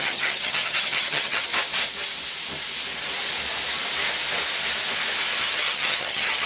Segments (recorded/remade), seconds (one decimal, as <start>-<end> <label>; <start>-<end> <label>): 0.0-1.5 remade; 1.5-5.4 recorded; 5.4-6.5 remade